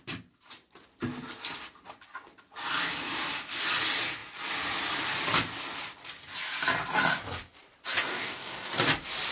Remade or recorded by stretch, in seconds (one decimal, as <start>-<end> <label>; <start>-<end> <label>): 0.0-8.1 recorded; 8.1-8.7 remade; 8.7-9.3 recorded